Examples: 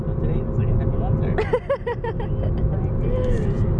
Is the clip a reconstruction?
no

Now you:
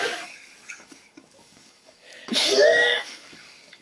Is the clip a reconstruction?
yes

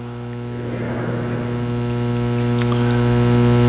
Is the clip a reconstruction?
no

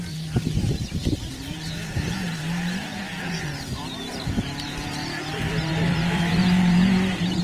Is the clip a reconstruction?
yes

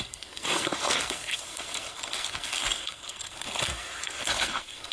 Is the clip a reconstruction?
yes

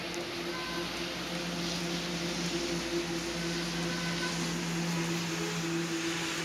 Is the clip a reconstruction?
no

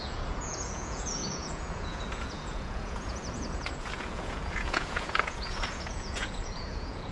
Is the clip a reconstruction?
yes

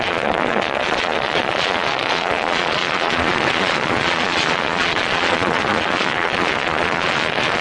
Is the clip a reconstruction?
yes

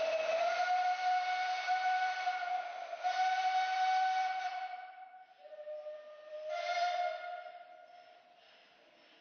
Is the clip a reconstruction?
no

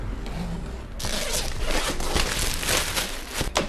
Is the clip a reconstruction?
no